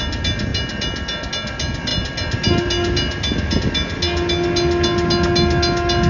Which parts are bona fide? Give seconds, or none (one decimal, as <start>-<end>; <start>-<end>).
0.0-6.1